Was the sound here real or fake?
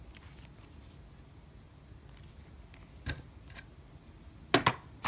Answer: real